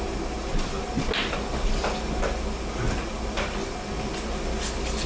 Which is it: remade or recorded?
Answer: recorded